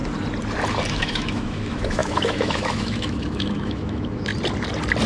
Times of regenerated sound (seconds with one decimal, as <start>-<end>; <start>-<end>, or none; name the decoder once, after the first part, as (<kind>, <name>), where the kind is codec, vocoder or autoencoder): 0.9-4.3 (autoencoder, DAC-VAE)